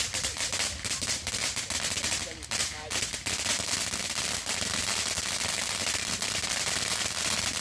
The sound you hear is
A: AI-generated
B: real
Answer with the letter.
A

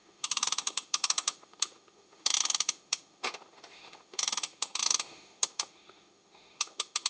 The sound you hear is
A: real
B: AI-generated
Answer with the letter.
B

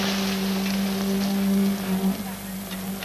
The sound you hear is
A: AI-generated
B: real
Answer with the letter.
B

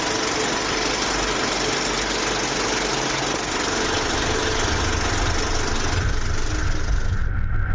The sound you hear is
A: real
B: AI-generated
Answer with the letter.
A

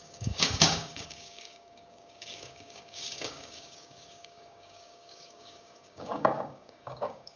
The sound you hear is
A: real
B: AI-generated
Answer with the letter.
B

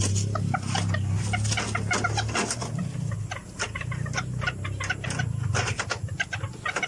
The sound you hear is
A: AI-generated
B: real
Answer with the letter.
B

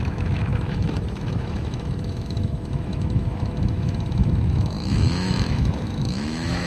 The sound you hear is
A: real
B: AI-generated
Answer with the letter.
B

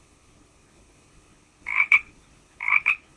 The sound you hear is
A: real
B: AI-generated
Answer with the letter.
B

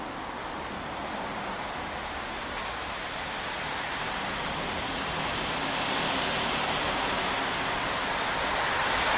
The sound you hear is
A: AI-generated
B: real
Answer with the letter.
B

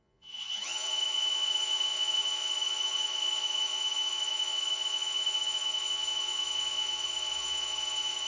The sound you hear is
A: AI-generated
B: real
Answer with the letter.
A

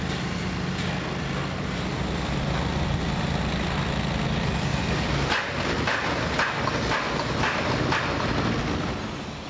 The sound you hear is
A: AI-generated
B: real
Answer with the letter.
B